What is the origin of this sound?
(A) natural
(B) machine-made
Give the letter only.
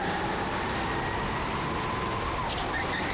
A